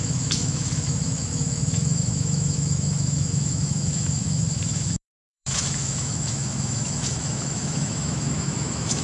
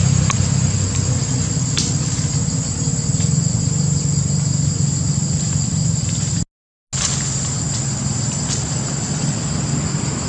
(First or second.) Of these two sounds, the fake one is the first